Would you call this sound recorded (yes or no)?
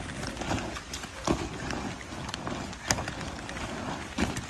yes